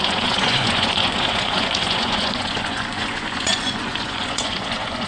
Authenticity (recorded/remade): remade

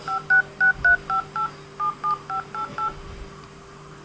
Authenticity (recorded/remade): recorded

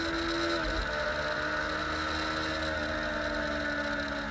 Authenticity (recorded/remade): recorded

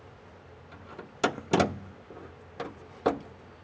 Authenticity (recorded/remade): recorded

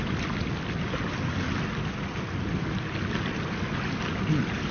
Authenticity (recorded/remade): recorded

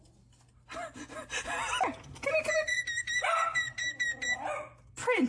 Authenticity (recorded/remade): recorded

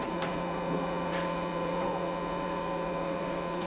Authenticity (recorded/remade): remade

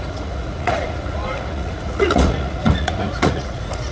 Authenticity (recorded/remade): remade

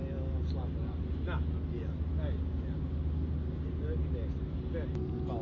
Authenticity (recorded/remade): recorded